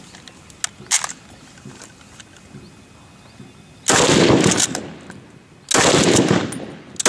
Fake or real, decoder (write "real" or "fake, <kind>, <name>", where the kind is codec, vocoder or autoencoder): real